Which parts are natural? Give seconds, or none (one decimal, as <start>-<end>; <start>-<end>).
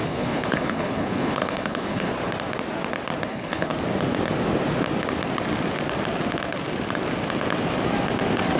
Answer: 2.1-3.3; 3.7-8.6